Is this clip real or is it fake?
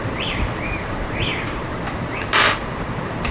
fake